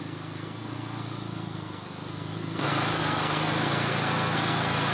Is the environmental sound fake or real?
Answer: fake